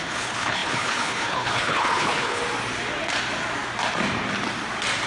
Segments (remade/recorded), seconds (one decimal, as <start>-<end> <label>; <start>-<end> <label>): 0.0-2.4 remade; 2.4-5.1 recorded